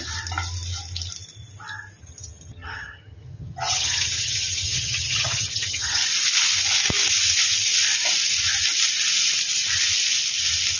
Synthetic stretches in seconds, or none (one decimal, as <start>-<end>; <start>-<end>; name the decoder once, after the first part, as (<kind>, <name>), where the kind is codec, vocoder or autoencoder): 2.0-6.0 (vocoder, HiFi-GAN)